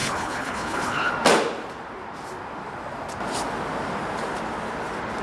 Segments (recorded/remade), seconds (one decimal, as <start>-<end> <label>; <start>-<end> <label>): 0.0-1.1 remade; 1.1-5.2 recorded